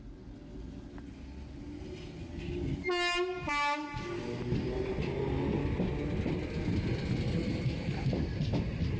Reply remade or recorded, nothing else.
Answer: recorded